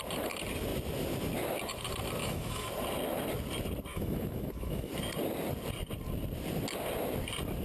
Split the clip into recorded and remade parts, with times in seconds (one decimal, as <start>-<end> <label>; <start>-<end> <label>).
0.0-2.2 recorded; 2.2-2.7 remade; 2.7-3.9 recorded; 3.9-4.9 remade; 4.9-7.6 recorded